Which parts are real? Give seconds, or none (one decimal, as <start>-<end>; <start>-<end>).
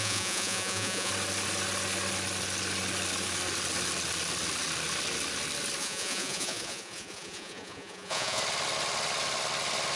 1.1-5.8; 8.4-10.0